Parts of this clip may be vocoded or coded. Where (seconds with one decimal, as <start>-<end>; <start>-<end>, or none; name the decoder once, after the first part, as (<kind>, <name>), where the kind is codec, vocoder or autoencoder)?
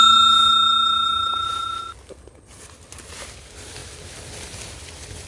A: none